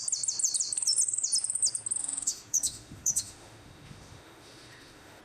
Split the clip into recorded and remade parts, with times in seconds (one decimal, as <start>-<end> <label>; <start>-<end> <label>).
0.0-2.0 recorded; 2.0-5.2 remade